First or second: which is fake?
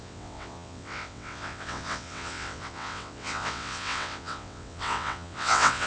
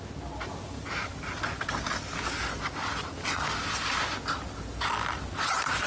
first